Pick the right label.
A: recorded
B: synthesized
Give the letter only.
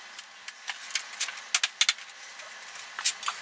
A